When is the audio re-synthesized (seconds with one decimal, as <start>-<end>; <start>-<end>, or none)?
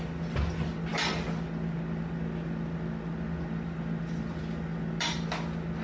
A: none